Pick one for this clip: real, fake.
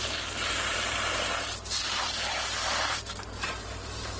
fake